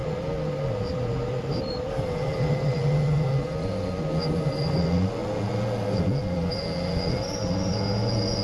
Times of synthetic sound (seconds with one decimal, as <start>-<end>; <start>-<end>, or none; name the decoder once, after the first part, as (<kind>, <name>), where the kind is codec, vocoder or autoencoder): none